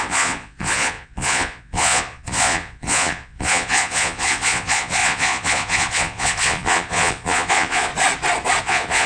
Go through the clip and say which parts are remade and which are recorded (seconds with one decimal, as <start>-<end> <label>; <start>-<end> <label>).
0.0-7.9 remade; 7.9-8.6 recorded; 8.6-9.1 remade